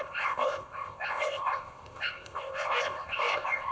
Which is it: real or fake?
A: fake